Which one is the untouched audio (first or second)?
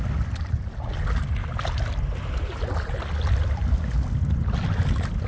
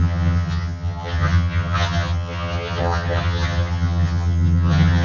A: first